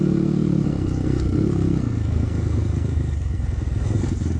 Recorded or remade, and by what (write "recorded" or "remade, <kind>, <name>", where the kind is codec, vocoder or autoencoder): remade, codec, SNAC